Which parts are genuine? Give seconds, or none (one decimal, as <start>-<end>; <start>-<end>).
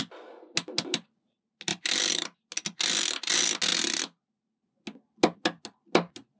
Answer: 0.0-6.4